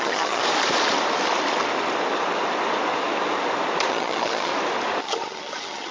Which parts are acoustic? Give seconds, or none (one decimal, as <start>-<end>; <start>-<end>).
0.4-3.9; 4.5-5.0